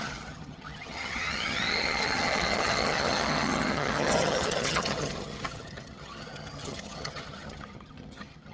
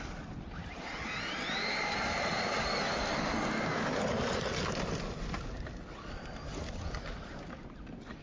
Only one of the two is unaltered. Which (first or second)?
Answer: second